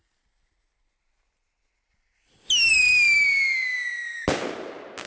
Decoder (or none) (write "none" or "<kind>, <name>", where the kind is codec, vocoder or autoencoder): none